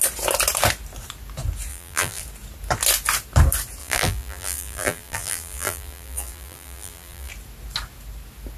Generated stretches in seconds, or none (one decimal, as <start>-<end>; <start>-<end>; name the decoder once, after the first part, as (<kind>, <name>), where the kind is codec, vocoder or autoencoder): 1.7-2.2 (vocoder, BigVGAN v2); 3.8-7.3